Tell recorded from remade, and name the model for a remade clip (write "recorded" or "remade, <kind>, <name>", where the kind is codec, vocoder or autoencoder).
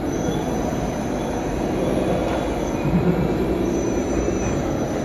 remade, vocoder, BigVGAN v2